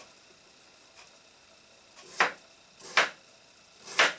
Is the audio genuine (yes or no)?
yes